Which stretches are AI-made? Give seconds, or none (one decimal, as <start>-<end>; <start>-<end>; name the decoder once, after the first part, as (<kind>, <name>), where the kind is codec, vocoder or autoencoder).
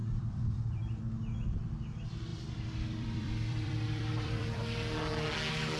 0.0-1.0 (vocoder, BigVGAN v2); 2.3-4.6